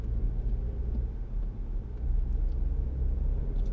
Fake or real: real